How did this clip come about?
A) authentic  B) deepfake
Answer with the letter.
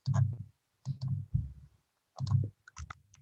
A